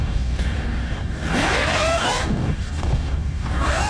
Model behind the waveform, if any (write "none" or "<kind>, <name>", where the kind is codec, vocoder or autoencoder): codec, DAC